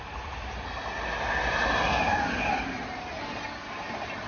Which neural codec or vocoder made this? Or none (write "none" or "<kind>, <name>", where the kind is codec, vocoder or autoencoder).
none